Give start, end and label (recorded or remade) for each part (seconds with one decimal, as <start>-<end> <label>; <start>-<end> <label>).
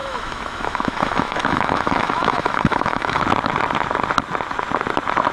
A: 0.0-3.2 remade; 3.2-5.3 recorded